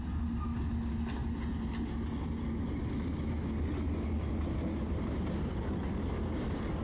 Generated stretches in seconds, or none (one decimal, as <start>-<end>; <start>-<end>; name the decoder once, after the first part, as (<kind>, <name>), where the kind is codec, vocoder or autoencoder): none